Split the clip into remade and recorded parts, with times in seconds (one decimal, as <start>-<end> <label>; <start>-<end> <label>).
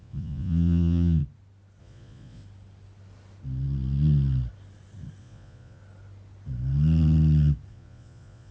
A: 0.0-1.2 remade; 1.2-1.8 recorded; 1.8-2.4 remade; 2.4-5.2 recorded; 5.2-5.8 remade; 5.8-7.7 recorded; 7.7-8.5 remade